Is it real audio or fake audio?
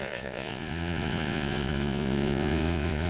fake